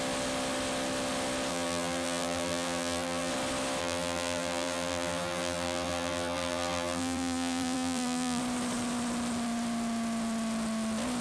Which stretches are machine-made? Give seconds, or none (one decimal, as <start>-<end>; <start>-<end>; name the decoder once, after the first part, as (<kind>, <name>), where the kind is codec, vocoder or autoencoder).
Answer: 1.5-3.3 (vocoder, BigVGAN v2); 3.8-8.4